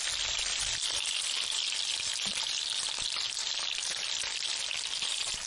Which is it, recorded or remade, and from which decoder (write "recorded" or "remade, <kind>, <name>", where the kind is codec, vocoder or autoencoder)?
recorded